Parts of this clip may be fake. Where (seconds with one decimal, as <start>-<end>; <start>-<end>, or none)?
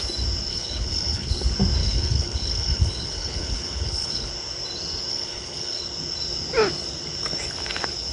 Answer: 0.5-1.3; 1.8-4.3; 5.1-5.8